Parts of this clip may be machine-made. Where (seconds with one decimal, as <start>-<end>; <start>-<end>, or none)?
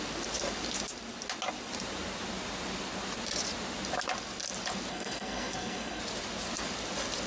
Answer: 4.9-6.0